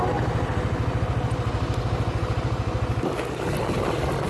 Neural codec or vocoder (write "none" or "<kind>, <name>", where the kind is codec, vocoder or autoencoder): none